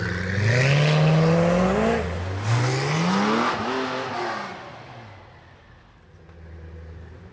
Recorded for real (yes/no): yes